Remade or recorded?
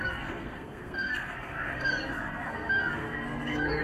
remade